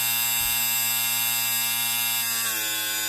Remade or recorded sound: recorded